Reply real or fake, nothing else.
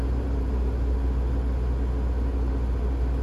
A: real